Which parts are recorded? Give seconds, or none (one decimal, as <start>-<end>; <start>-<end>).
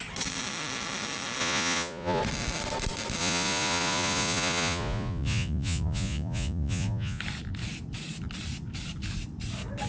0.0-1.4; 2.2-3.2; 7.2-9.9